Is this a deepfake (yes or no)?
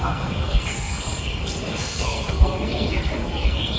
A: yes